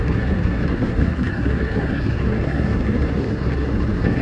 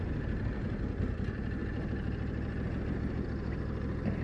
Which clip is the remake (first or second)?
first